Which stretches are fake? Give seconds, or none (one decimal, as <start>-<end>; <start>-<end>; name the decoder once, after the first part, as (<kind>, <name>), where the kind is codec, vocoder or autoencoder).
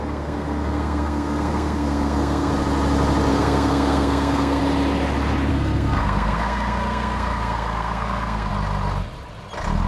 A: 0.0-2.5 (codec, SNAC); 3.3-4.6; 5.5-8.5